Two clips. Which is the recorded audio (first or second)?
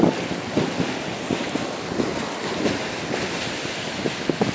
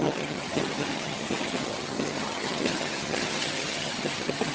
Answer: first